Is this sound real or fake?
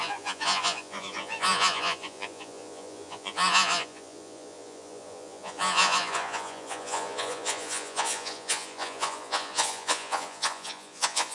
fake